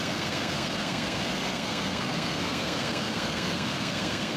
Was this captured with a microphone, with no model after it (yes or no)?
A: no